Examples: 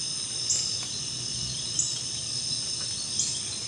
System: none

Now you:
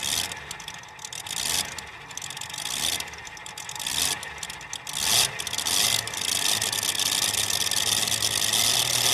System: none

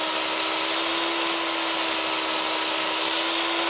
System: none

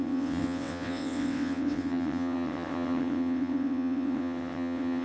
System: vocoder, WaveNeXt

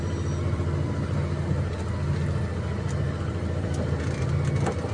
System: vocoder, BigVGAN v2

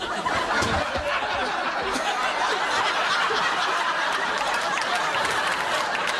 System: none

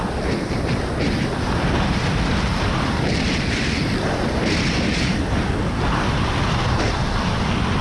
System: none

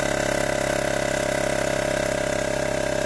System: none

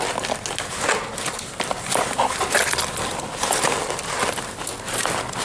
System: none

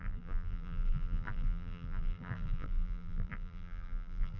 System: vocoder, BigVGAN v2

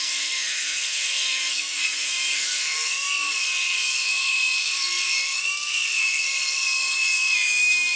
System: codec, SNAC